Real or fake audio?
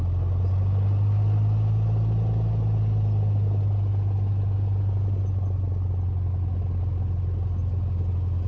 real